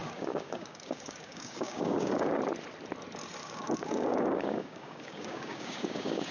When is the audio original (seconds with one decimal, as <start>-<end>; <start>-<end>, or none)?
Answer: 2.4-3.4